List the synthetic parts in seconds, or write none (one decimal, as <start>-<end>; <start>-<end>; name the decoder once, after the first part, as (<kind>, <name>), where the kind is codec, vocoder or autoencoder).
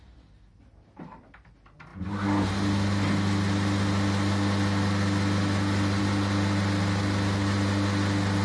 none